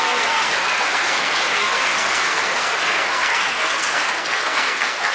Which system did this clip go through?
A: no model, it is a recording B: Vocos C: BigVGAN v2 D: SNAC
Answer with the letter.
D